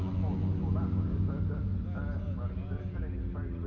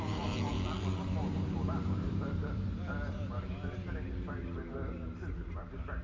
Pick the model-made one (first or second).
second